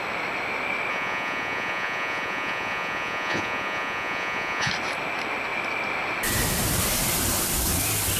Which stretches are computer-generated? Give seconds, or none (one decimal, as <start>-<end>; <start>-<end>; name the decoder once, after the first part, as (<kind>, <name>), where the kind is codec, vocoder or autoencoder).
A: 0.9-4.7 (vocoder, Vocos)